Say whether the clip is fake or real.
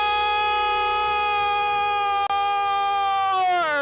real